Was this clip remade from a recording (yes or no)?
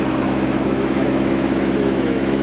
yes